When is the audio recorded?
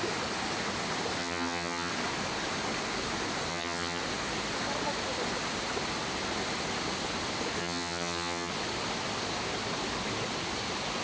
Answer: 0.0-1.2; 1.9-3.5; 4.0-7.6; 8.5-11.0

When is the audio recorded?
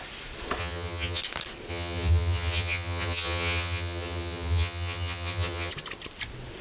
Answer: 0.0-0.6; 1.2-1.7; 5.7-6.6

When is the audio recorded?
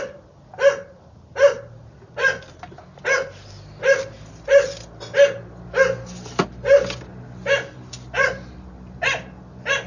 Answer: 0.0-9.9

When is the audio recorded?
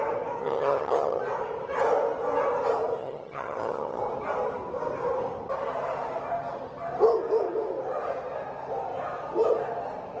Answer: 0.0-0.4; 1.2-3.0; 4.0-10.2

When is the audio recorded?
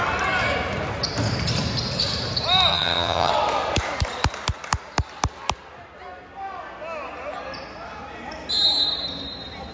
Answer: 0.0-2.7; 3.3-9.7